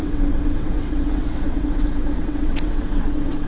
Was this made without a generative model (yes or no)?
no